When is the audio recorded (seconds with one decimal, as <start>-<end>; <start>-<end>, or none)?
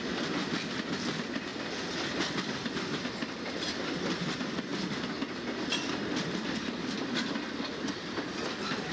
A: 0.0-8.9